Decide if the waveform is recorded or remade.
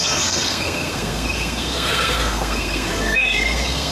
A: remade